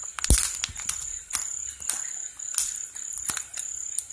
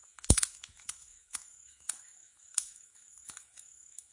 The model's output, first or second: second